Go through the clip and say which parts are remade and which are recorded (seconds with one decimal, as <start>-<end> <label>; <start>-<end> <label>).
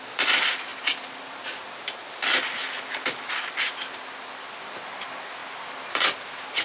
0.0-6.6 recorded